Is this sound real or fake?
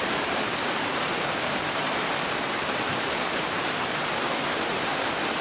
fake